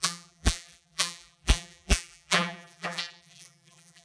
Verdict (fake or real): fake